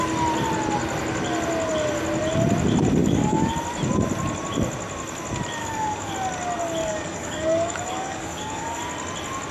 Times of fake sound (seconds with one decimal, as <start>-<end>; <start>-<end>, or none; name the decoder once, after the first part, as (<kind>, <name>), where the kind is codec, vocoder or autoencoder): 3.0-3.5 (codec, DAC); 5.6-6.1; 6.8-8.8